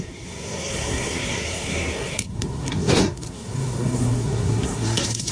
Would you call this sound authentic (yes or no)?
no